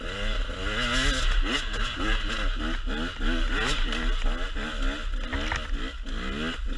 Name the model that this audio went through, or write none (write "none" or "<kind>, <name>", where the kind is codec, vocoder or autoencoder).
none